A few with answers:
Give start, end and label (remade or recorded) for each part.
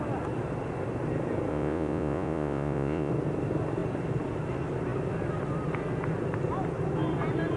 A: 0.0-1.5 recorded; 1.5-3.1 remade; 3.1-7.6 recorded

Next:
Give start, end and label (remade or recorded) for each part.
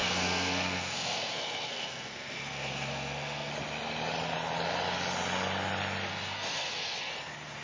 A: 0.0-3.5 remade; 3.5-6.1 recorded; 6.1-7.1 remade; 7.1-7.6 recorded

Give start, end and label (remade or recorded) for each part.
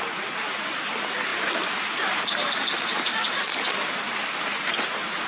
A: 0.0-5.3 recorded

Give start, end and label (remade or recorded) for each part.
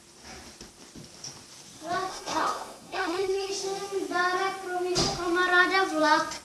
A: 0.0-2.1 recorded; 2.1-3.5 remade; 3.5-6.4 recorded